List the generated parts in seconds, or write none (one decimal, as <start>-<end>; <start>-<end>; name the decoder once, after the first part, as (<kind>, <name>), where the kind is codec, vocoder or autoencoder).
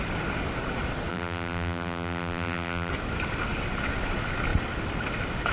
1.1-2.9 (vocoder, BigVGAN v2)